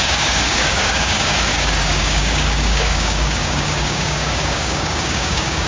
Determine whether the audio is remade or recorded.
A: remade